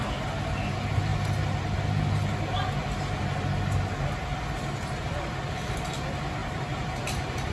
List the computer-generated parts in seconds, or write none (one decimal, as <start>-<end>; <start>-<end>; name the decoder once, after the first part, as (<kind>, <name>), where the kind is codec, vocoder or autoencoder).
6.4-6.9 (vocoder, BigVGAN v2)